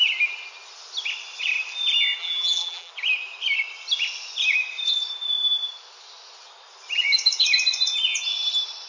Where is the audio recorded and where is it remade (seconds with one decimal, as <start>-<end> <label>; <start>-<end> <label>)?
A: 0.0-2.2 recorded; 2.2-2.9 remade; 2.9-8.9 recorded